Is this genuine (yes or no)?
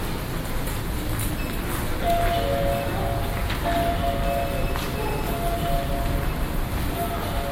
yes